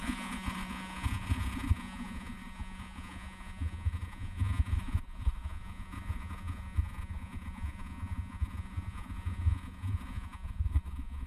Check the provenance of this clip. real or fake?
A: fake